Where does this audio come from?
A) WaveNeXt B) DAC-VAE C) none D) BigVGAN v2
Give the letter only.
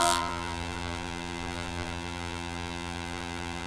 D